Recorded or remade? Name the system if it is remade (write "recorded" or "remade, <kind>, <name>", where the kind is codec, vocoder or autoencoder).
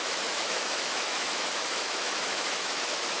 remade, autoencoder, DAC-VAE